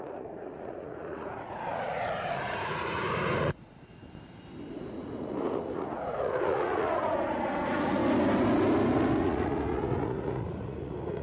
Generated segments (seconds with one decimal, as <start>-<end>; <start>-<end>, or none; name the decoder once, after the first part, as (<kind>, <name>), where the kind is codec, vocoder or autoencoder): 0.0-4.0 (vocoder, Vocos); 4.7-8.0; 9.2-11.2